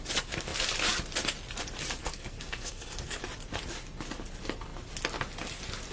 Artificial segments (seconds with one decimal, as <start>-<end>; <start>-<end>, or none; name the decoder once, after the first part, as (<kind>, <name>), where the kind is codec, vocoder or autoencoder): 2.0-3.2 (codec, SNAC)